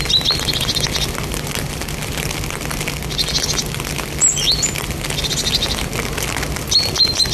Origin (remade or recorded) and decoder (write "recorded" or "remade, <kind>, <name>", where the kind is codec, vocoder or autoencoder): recorded